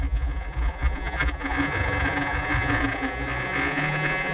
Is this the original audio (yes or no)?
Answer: no